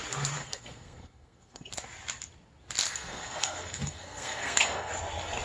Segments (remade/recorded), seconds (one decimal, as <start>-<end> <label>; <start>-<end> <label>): 0.0-0.4 recorded; 0.4-1.7 remade; 1.7-2.9 recorded; 2.9-4.9 remade; 4.9-5.4 recorded